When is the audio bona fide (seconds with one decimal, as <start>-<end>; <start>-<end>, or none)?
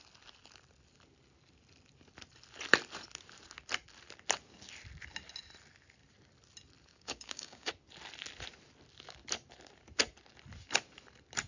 0.0-6.9; 7.7-11.5